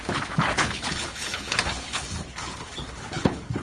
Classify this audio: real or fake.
fake